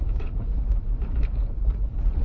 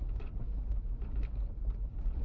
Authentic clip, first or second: second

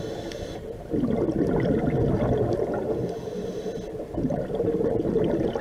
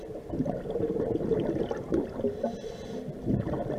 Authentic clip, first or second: first